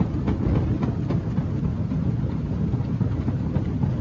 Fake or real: real